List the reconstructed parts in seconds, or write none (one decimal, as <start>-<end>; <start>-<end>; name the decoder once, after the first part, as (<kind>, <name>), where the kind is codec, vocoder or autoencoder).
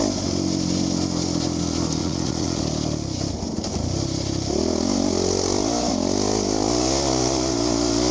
2.0-2.6 (vocoder, Vocos)